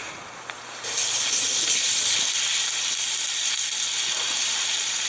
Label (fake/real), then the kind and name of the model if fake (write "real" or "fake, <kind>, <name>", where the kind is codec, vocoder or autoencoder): real